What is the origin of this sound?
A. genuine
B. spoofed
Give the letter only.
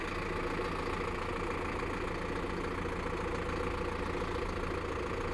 A